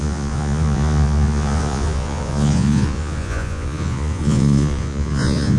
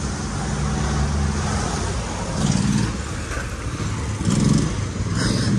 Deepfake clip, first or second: first